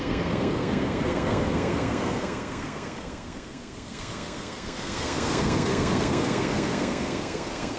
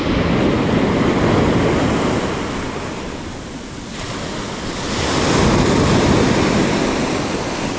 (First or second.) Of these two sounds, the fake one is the first